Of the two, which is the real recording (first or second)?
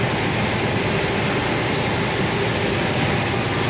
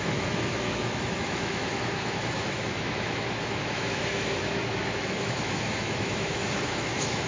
first